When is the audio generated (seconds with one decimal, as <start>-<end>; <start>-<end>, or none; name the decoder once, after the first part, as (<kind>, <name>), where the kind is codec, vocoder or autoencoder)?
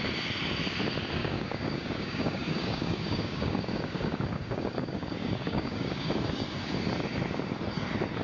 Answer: 1.2-6.1 (codec, DAC)